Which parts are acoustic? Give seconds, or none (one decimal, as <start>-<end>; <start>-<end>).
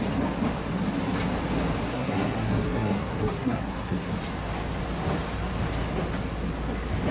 0.0-1.8; 4.1-7.1